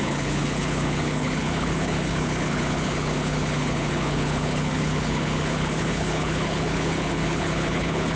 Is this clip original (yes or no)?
no